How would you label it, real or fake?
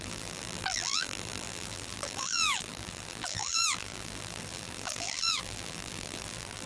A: fake